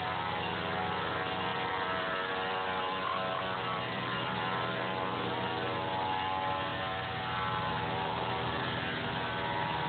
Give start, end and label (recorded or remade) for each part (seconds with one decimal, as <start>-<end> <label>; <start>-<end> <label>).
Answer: 0.0-1.5 recorded; 1.5-4.4 remade; 4.4-9.9 recorded